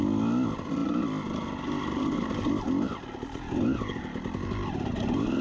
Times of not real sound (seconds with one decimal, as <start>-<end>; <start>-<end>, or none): none